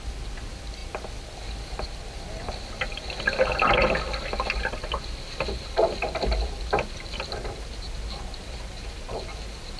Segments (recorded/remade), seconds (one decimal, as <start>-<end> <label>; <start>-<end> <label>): 0.0-9.8 recorded